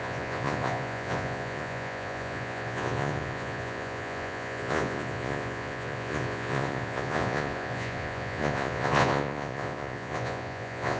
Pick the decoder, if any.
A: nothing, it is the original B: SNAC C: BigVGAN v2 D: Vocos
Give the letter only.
D